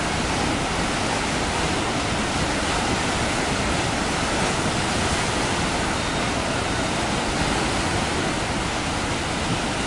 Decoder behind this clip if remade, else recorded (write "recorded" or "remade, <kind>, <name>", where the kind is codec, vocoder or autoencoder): recorded